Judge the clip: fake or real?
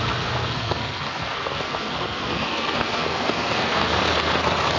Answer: fake